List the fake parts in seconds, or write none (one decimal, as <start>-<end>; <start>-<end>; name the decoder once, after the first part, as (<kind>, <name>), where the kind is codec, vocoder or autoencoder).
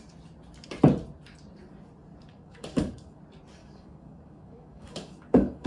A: 2.3-3.2 (codec, DAC); 3.6-5.7